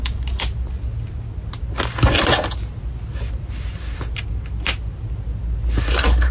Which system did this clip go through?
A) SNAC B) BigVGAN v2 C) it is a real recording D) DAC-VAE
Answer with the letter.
C